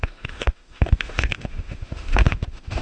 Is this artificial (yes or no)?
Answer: yes